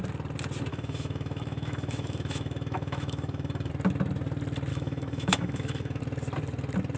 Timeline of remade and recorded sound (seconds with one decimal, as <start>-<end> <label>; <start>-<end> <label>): 0.0-0.7 recorded; 0.7-3.7 remade; 3.7-4.7 recorded; 4.7-6.0 remade; 6.0-7.0 recorded